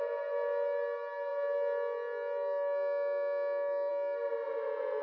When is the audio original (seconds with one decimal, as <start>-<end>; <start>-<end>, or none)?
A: 0.0-5.0